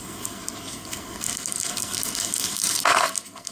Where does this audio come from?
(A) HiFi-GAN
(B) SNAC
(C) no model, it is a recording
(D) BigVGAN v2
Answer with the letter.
B